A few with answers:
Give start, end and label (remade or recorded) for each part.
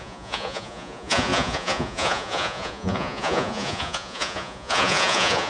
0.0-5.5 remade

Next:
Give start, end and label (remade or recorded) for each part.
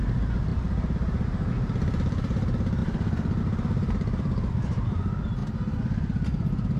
0.0-6.8 recorded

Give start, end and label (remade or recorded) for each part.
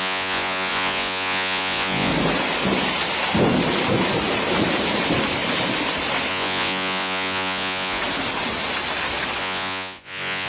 0.0-2.1 remade; 2.1-6.3 recorded; 6.3-8.0 remade; 8.0-9.4 recorded; 9.4-10.5 remade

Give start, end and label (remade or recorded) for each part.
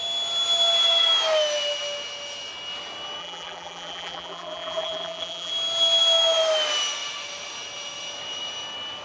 0.0-3.2 recorded; 3.2-5.5 remade; 5.5-9.0 recorded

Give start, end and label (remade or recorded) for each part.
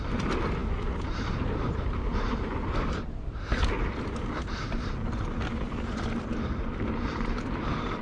0.0-0.6 recorded; 0.6-5.4 remade; 5.4-6.3 recorded; 6.3-8.0 remade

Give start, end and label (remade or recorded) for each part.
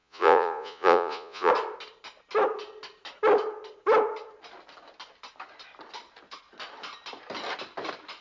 0.0-1.5 remade; 1.5-8.2 recorded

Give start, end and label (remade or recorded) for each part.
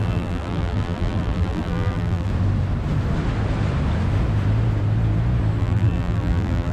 0.0-2.3 remade; 2.3-5.6 recorded; 5.6-6.7 remade